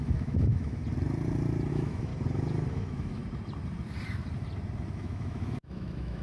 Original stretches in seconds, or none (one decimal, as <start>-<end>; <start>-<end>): 0.8-1.7; 2.1-2.7; 3.2-4.8